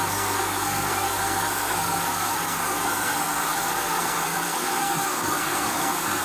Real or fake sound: fake